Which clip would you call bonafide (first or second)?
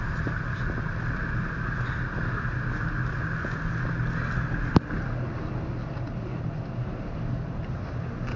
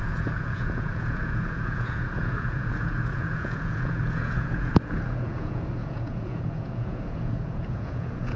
first